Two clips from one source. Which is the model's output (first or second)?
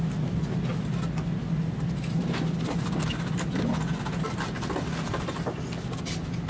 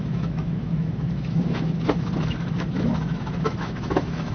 second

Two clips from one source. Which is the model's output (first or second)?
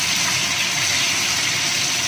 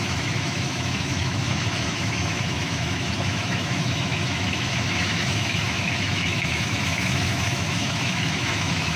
second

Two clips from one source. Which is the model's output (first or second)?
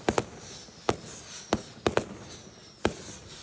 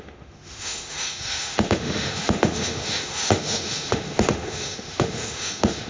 second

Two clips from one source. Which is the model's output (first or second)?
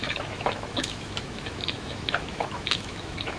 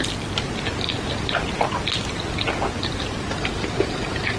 first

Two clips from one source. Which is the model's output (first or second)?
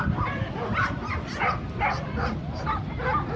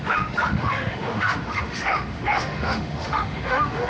second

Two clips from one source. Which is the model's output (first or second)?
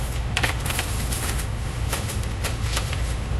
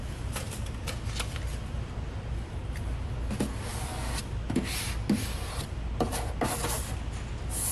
first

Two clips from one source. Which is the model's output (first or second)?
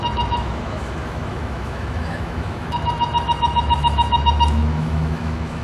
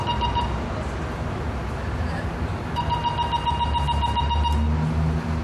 first